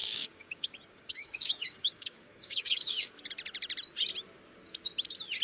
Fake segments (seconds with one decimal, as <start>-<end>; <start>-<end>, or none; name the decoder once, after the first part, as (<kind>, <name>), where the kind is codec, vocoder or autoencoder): 0.0-3.2 (codec, DAC)